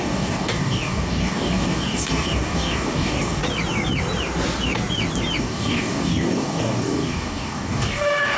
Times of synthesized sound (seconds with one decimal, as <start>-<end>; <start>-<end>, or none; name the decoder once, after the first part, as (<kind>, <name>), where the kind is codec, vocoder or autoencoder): 0.0-3.4 (codec, DAC); 5.4-8.4